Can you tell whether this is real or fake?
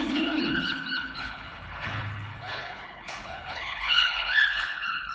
fake